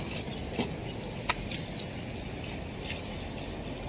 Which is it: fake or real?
real